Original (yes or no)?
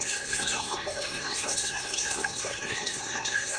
no